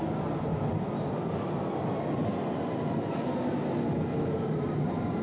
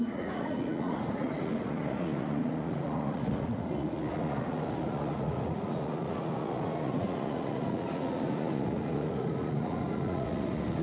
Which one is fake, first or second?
second